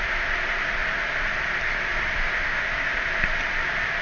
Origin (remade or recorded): recorded